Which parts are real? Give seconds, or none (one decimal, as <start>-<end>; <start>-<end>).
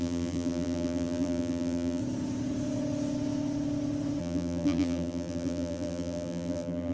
2.0-4.2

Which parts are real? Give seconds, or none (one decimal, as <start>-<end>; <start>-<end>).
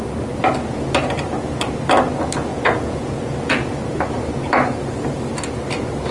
0.0-2.5; 3.8-6.1